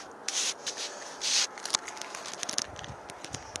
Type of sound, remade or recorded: recorded